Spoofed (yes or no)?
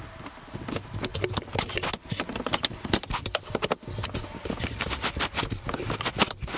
no